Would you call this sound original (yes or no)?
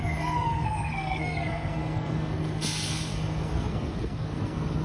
no